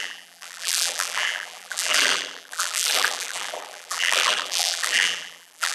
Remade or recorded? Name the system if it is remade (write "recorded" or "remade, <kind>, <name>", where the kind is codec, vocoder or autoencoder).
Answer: remade, vocoder, BigVGAN v2